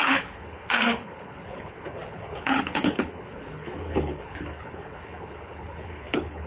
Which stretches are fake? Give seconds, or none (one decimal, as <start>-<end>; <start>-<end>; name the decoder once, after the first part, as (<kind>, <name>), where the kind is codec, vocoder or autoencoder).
0.0-6.5 (codec, HILCodec)